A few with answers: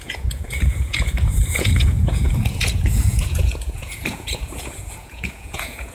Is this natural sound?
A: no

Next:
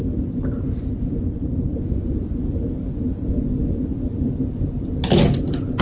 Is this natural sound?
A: yes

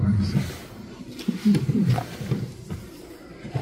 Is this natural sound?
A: yes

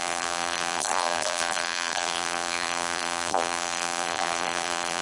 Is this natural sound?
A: no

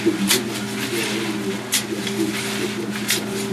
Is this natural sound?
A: yes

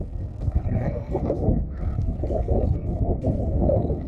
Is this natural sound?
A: no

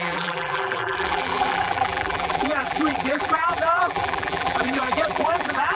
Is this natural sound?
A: no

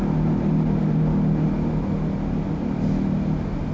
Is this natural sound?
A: yes